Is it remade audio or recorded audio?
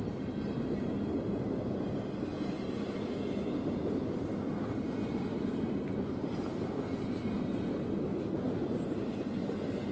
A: recorded